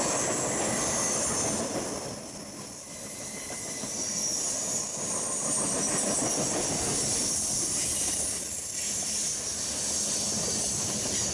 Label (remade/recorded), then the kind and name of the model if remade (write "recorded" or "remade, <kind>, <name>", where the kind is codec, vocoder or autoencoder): recorded